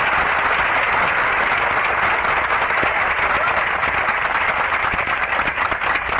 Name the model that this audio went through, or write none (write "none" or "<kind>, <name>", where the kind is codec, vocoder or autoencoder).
none